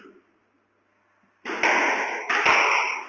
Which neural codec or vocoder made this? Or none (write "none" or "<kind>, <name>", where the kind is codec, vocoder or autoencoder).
none